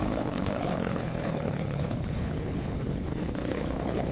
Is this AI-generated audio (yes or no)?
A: yes